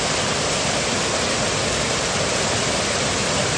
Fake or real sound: real